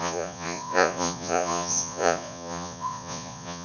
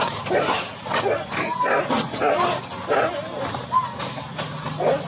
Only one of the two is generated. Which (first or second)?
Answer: first